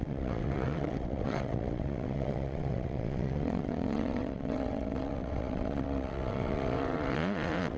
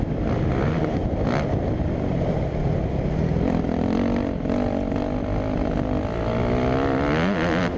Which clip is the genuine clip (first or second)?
second